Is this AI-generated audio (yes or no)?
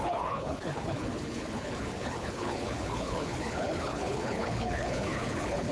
yes